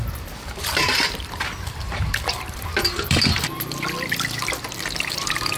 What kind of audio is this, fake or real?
fake